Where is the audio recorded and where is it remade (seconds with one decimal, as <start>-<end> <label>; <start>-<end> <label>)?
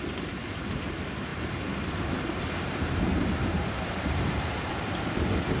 0.0-1.3 recorded; 1.3-4.7 remade; 4.7-5.6 recorded